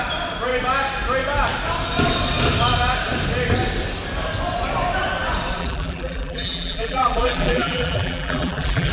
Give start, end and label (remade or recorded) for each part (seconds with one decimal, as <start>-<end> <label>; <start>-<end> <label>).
0.0-5.6 recorded; 5.6-8.9 remade